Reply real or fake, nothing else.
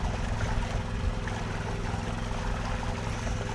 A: real